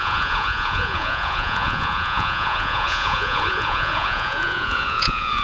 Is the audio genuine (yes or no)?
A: no